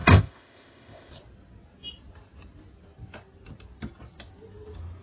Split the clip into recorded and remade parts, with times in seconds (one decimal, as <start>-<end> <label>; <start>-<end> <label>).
0.0-1.1 remade; 1.1-5.0 recorded